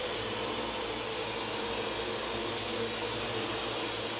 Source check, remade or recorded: recorded